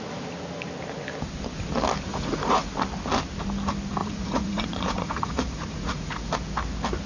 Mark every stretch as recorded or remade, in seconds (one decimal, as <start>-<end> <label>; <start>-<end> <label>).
0.0-2.1 recorded; 2.1-2.7 remade; 2.7-4.0 recorded; 4.0-6.3 remade; 6.3-7.1 recorded